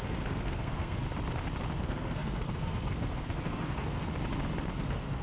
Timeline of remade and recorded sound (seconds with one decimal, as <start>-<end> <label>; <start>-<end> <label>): 0.0-1.0 remade; 1.0-1.8 recorded; 1.8-4.1 remade; 4.1-4.8 recorded; 4.8-5.2 remade